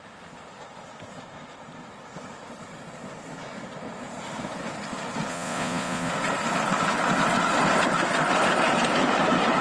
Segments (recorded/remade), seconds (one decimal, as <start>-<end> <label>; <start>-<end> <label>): 0.0-5.3 recorded; 5.3-6.1 remade; 6.1-9.6 recorded